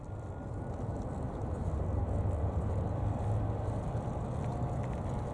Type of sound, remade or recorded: recorded